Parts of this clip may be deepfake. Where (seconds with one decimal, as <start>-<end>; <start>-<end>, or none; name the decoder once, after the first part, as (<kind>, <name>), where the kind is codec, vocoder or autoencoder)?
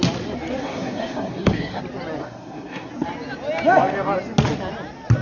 0.6-1.8 (codec, SNAC); 2.2-2.9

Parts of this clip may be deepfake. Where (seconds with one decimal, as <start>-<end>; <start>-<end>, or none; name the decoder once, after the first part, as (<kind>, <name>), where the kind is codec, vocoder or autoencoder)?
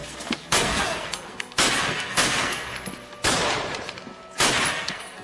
0.0-2.7 (codec, SNAC); 4.7-5.2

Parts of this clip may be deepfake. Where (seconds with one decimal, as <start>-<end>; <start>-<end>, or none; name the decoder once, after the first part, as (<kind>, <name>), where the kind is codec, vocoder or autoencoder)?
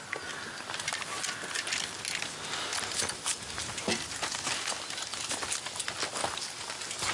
none